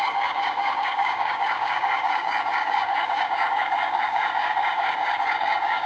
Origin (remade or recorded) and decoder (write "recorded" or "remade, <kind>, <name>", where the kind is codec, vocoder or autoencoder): remade, codec, DAC